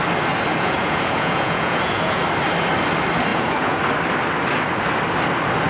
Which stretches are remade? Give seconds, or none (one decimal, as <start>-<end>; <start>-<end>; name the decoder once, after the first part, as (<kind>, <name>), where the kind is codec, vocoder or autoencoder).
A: 0.5-2.2 (vocoder, Vocos); 3.3-3.8